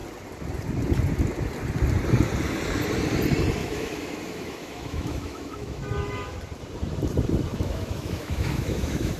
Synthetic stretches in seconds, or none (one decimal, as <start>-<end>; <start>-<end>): 3.6-6.3; 7.5-9.2